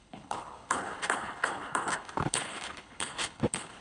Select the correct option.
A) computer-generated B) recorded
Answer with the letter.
A